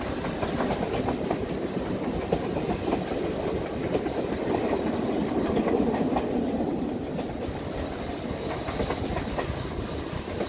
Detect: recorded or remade recorded